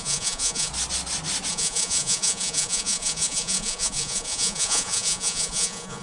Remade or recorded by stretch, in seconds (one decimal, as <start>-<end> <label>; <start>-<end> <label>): 0.0-0.7 remade; 0.7-1.5 recorded; 1.5-6.0 remade